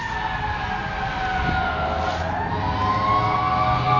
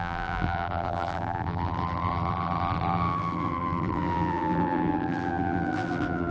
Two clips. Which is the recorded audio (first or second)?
first